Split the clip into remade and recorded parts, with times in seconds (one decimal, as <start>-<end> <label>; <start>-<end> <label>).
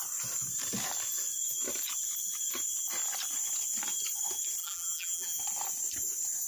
0.0-4.6 recorded; 4.6-5.4 remade; 5.4-6.5 recorded